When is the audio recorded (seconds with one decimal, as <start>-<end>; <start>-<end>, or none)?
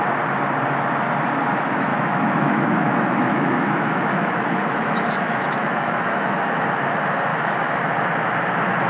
0.0-1.9; 6.7-7.3; 7.8-8.9